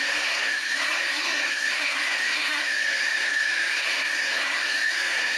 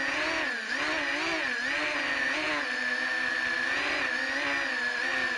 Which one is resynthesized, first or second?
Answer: first